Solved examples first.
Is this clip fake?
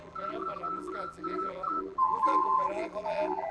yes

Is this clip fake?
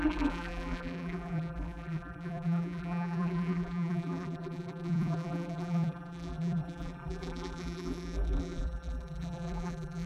yes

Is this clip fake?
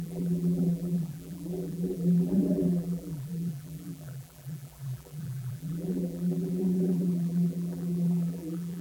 yes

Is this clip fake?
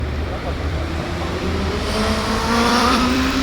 yes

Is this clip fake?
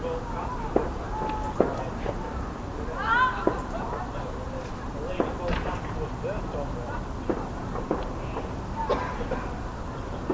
no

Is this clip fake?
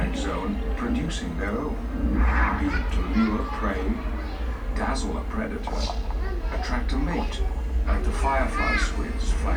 no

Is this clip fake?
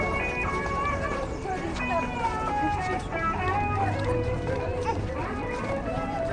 yes